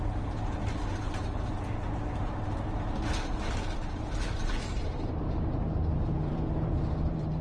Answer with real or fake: fake